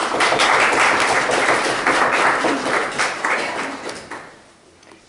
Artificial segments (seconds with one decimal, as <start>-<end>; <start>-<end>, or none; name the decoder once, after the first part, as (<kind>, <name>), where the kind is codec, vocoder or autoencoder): 0.0-2.0 (vocoder, BigVGAN v2); 2.8-3.4